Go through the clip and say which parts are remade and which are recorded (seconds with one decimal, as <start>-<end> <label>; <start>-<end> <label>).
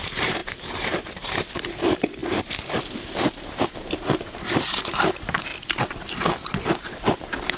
0.0-5.5 remade; 5.5-6.5 recorded; 6.5-7.6 remade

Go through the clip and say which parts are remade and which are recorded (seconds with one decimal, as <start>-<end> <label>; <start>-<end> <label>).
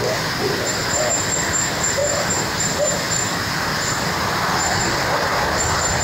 0.0-6.0 recorded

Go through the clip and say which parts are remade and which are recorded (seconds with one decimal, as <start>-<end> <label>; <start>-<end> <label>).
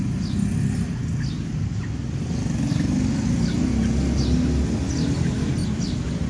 0.0-6.3 recorded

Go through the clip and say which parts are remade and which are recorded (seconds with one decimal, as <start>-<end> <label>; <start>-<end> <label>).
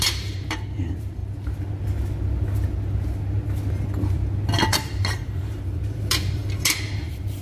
0.0-1.2 remade; 1.2-4.7 recorded; 4.7-6.4 remade; 6.4-7.0 recorded; 7.0-7.4 remade